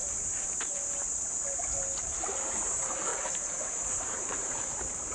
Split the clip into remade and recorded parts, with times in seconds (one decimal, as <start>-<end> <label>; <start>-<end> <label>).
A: 0.0-0.9 remade; 0.9-3.1 recorded; 3.1-5.1 remade